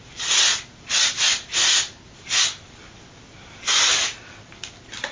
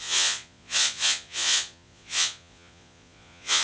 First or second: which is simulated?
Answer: second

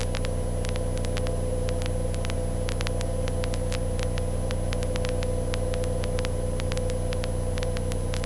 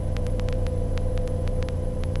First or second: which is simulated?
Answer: second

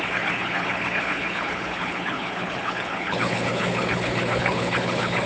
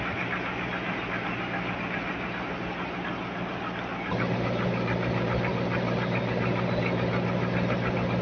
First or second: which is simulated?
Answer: first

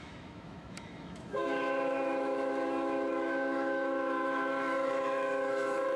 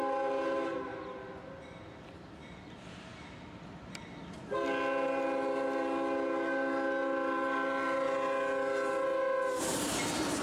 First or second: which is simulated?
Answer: first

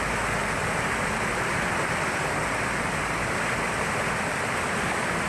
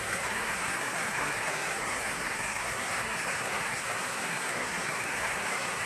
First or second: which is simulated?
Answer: second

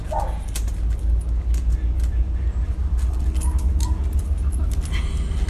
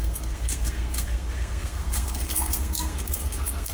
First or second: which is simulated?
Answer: second